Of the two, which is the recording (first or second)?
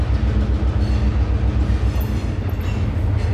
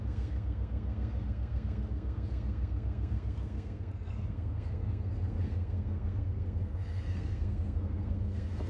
first